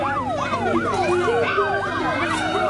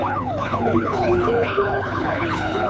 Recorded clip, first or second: first